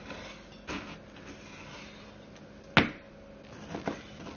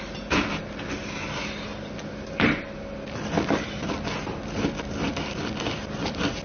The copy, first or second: second